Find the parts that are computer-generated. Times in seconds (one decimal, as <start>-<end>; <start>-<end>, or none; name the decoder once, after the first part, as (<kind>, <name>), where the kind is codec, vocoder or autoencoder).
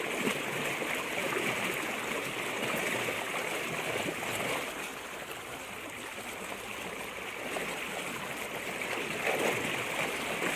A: 1.2-1.7 (vocoder, BigVGAN v2)